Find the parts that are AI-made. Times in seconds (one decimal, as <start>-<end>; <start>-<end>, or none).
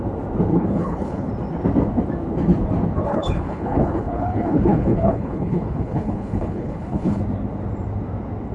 0.5-1.3; 3.1-7.2